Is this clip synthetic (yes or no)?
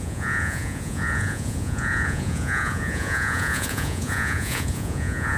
yes